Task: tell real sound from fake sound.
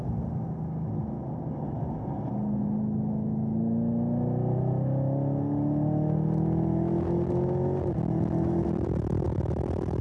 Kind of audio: real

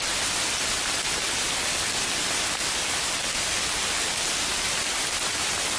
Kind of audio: real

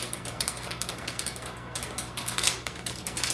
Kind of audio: fake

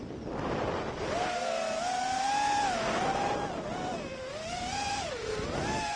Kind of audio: real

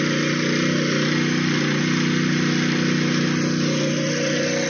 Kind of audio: real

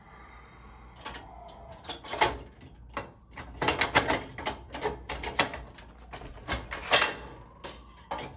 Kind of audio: real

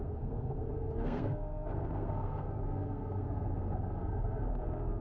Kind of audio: fake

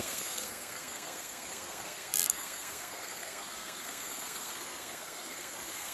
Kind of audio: fake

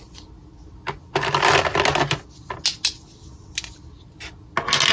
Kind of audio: real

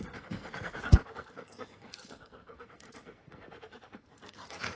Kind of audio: fake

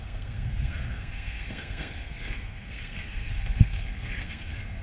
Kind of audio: fake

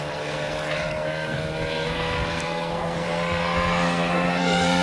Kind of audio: fake